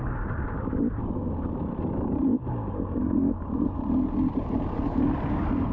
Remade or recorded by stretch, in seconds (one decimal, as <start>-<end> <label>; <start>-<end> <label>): 0.0-2.2 recorded; 2.2-5.7 remade